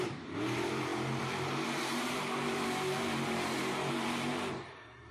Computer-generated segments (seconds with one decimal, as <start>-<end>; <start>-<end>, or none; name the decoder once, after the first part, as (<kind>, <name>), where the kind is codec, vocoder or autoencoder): 0.0-5.1 (vocoder, BigVGAN v2)